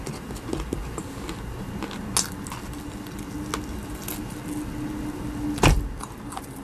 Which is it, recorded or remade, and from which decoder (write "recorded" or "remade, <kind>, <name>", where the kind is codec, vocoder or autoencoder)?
recorded